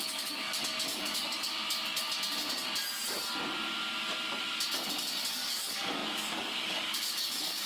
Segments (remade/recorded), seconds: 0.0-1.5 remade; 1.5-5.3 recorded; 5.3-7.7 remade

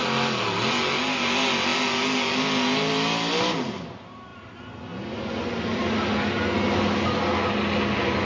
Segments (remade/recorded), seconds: 0.0-8.3 recorded

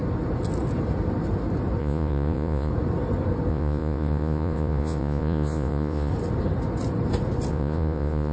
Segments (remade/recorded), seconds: 0.0-1.8 recorded; 1.8-2.7 remade; 2.7-3.5 recorded; 3.5-6.1 remade; 6.1-7.5 recorded; 7.5-8.3 remade

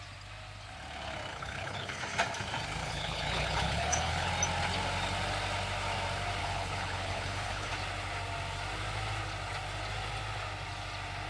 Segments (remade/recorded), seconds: 0.0-1.3 recorded; 1.3-2.0 remade; 2.0-2.8 recorded; 2.8-4.3 remade; 4.3-6.4 recorded; 6.4-7.7 remade; 7.7-11.3 recorded

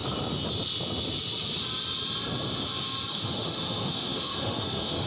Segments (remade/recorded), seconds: 0.0-3.1 recorded; 3.1-5.1 remade

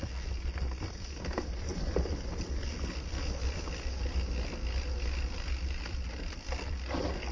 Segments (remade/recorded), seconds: 0.0-7.3 recorded